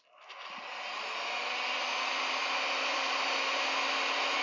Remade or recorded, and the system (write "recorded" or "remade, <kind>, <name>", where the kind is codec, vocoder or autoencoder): recorded